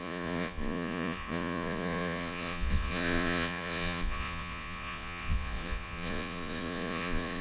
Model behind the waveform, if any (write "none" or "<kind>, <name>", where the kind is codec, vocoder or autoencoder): vocoder, Vocos